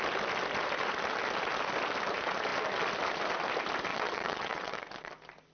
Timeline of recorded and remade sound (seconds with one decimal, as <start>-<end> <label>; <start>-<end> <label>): 0.0-3.9 recorded; 3.9-5.1 remade; 5.1-5.5 recorded